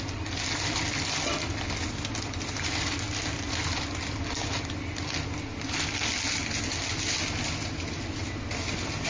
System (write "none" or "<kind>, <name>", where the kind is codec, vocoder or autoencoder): none